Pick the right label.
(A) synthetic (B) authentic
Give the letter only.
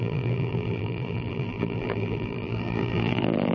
A